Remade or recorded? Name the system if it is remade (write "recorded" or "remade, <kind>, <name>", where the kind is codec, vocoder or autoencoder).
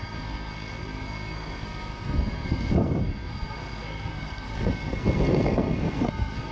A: remade, codec, SNAC